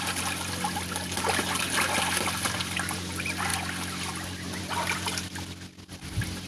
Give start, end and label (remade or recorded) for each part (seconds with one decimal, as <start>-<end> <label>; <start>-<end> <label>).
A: 0.0-6.5 recorded